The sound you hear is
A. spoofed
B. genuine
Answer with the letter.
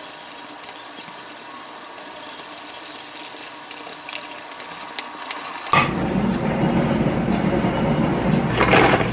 B